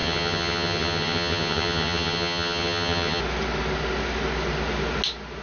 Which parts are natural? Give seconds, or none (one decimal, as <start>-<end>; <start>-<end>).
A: 3.2-5.4